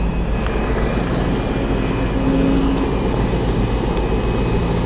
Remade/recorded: recorded